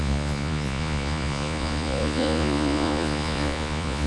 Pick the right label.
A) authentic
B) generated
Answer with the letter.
B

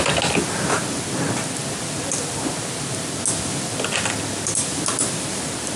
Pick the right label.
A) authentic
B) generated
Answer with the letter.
A